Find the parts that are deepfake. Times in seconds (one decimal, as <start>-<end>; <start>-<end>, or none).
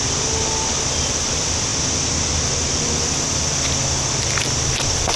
none